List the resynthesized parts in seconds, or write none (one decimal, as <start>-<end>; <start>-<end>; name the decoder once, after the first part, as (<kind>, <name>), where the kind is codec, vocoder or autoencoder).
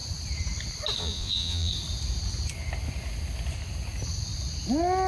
1.0-1.7 (vocoder, Vocos)